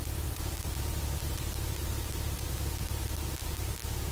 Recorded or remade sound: recorded